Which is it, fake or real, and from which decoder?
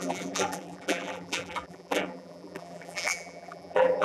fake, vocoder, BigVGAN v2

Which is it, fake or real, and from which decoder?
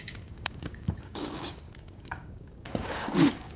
fake, codec, DAC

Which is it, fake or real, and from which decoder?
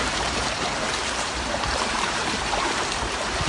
fake, vocoder, BigVGAN v2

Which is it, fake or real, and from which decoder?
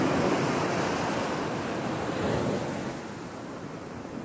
real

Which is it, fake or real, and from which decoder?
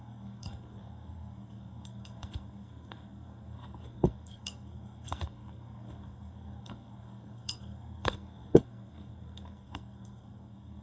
fake, codec, SNAC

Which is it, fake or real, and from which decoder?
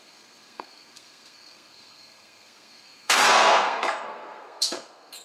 fake, codec, SNAC